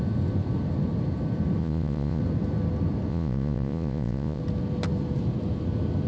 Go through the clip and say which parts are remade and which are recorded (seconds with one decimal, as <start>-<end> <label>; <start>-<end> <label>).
0.0-1.6 recorded; 1.6-2.2 remade; 2.2-3.1 recorded; 3.1-4.4 remade; 4.4-6.1 recorded